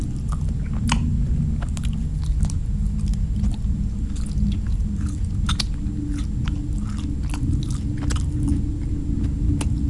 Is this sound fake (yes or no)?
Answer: no